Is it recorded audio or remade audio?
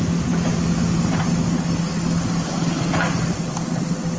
recorded